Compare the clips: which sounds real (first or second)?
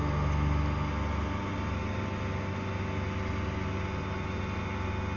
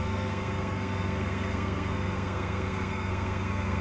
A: first